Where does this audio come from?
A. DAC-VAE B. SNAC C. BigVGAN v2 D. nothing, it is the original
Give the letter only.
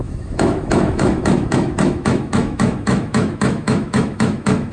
A